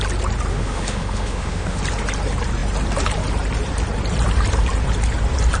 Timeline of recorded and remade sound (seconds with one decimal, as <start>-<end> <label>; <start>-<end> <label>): 0.0-0.5 recorded; 0.5-1.8 remade; 1.8-5.6 recorded